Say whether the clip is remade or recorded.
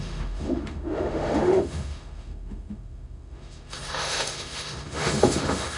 remade